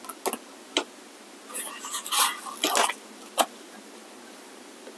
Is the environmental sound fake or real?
real